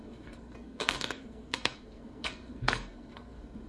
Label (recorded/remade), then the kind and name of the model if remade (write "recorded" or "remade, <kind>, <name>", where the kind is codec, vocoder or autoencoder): remade, codec, SNAC